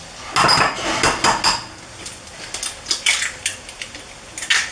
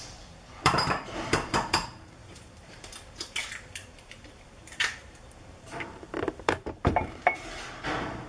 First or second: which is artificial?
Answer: second